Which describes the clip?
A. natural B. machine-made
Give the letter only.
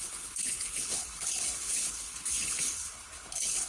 B